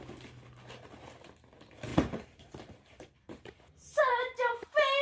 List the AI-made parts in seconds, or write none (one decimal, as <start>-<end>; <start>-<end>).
1.9-5.0